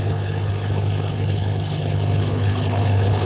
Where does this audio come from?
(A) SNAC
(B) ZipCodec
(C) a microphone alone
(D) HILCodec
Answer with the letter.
D